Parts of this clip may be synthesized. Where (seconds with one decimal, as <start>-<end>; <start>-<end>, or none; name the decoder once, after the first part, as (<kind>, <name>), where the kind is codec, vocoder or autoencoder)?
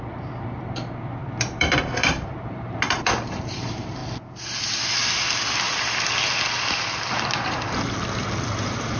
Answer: 0.0-4.0 (vocoder, BigVGAN v2); 8.6-9.0